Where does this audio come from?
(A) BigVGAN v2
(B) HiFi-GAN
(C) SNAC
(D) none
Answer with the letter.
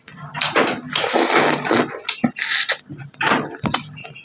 D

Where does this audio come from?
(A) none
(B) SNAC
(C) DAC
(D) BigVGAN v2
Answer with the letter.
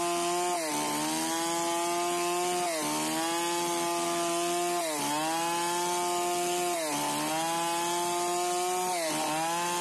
A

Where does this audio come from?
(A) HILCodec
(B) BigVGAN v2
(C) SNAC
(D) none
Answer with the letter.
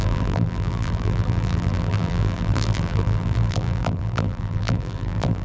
B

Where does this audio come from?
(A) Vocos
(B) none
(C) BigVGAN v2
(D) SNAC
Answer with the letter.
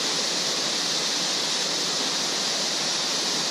B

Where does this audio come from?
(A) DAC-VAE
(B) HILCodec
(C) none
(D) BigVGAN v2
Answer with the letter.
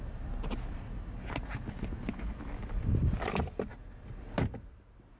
D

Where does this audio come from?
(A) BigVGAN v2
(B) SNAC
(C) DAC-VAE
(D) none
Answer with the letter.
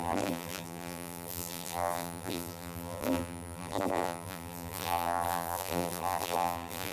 A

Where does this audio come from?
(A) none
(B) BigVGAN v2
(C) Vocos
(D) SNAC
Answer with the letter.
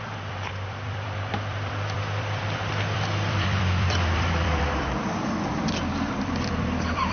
B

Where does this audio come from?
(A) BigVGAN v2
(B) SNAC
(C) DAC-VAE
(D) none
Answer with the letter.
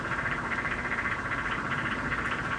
A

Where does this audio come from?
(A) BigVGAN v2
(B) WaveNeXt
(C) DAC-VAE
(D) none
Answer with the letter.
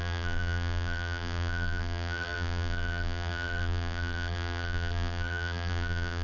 A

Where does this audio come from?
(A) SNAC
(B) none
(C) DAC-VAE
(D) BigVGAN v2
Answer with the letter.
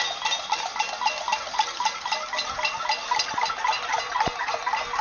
D